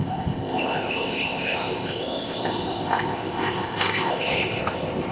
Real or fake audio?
fake